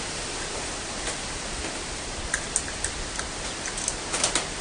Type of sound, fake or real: real